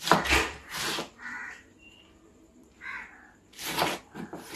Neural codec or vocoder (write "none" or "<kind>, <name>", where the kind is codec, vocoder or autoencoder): vocoder, BigVGAN v2